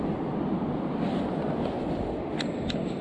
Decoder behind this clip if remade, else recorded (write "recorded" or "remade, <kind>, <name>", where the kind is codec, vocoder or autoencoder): recorded